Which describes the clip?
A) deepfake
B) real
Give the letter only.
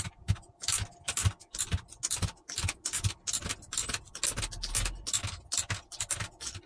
B